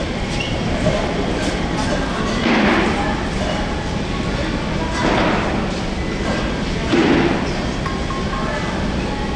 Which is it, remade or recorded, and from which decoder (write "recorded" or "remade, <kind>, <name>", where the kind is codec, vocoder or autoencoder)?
recorded